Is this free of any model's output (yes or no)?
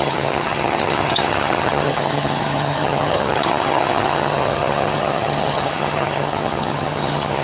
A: no